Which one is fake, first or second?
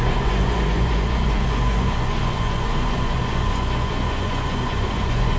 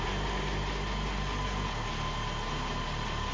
first